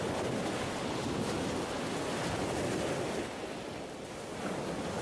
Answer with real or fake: real